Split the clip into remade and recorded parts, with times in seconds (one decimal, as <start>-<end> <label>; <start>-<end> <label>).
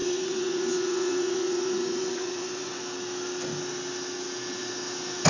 0.0-2.8 remade; 2.8-5.3 recorded